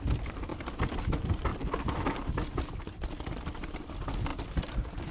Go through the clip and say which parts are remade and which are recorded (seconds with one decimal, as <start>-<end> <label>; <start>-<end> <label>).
0.0-1.5 remade; 1.5-2.9 recorded; 2.9-5.1 remade